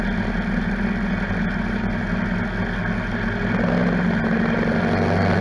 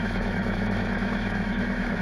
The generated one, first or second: second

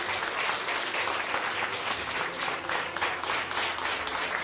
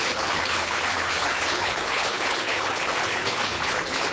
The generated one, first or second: second